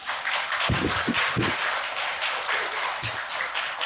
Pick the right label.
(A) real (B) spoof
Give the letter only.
A